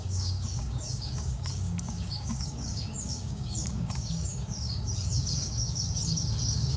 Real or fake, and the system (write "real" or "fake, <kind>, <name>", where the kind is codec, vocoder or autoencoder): fake, codec, DAC